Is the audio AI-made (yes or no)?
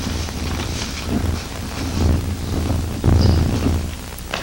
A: no